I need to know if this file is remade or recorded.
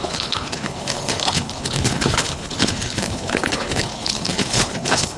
remade